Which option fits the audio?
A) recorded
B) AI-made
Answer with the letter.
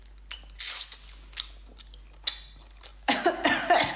A